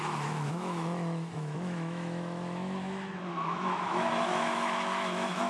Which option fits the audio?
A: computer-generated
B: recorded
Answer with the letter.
A